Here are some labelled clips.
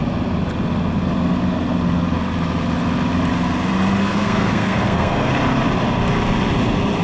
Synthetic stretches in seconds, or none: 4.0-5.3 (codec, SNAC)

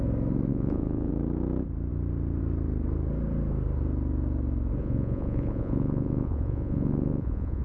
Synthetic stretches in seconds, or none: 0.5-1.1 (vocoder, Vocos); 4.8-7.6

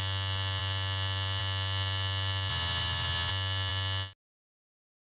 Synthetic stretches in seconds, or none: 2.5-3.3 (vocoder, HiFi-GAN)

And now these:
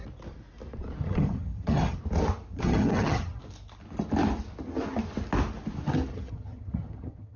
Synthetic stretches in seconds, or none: 1.0-2.0 (vocoder, HiFi-GAN); 2.5-3.4; 6.1-7.4

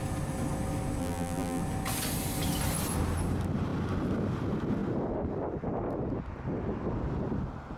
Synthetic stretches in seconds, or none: 1.0-1.6 (vocoder, BigVGAN v2)

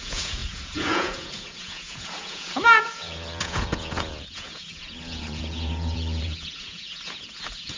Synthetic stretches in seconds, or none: 0.0-7.8 (vocoder, Vocos)